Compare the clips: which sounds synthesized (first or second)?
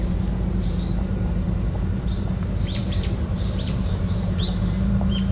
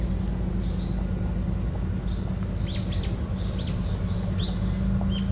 first